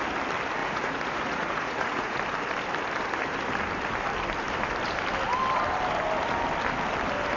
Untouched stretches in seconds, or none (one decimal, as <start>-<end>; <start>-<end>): 0.0-0.6; 2.2-7.4